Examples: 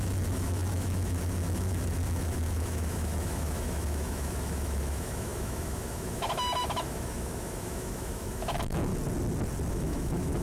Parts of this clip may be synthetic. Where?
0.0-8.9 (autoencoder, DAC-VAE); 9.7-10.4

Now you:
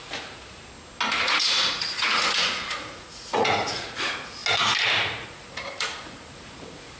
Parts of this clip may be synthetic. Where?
0.0-0.6 (vocoder, Vocos); 1.2-4.4; 5.0-7.0

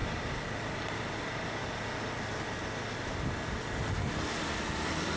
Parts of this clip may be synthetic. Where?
none

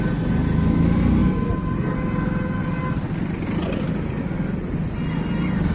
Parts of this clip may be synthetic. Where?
none